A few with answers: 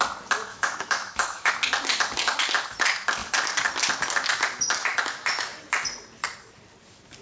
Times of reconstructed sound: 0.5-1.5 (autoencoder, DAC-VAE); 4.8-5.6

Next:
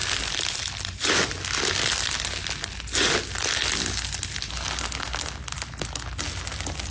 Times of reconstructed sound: none

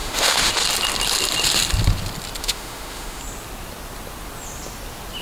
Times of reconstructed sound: 0.0-0.5 (autoencoder, DAC-VAE); 2.4-3.2

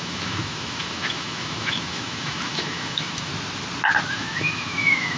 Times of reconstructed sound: 0.0-3.3 (autoencoder, DAC-VAE); 4.1-5.2

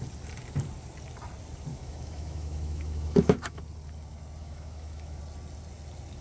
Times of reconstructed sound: 1.7-3.6 (autoencoder, DAC-VAE); 4.4-5.2

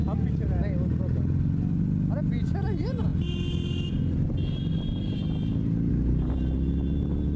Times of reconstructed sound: none

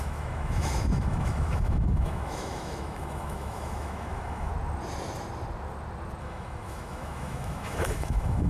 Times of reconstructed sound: 0.0-4.5 (autoencoder, DAC-VAE); 6.2-8.5